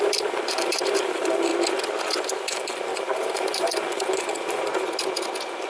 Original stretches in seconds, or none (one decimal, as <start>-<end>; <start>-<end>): 1.5-2.1; 4.7-5.7